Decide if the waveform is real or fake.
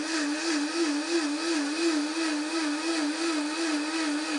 real